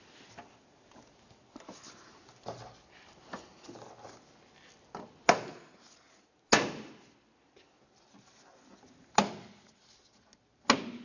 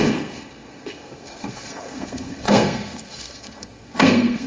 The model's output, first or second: second